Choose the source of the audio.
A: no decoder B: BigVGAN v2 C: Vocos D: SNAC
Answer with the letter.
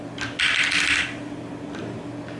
A